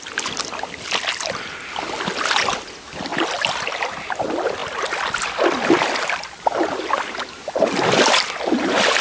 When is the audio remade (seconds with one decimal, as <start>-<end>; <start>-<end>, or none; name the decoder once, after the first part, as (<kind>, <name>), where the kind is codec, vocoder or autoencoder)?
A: none